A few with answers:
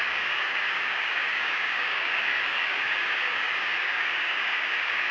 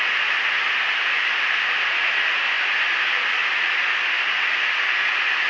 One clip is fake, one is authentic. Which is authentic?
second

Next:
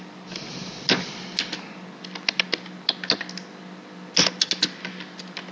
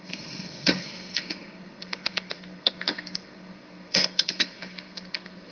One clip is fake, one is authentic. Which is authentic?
first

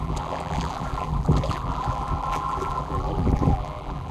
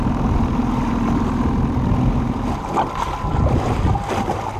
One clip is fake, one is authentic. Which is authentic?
second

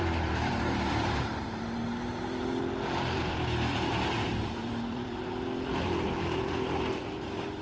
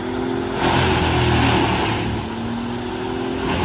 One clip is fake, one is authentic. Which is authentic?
second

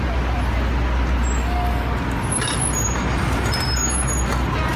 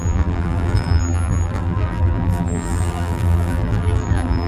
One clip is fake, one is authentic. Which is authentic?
first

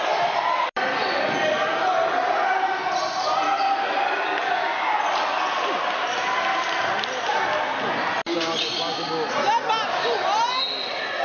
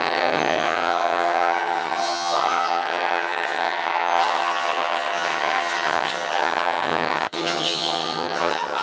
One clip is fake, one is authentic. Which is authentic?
first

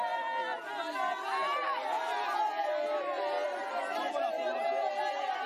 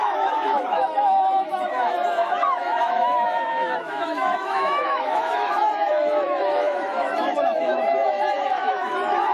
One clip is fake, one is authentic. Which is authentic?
first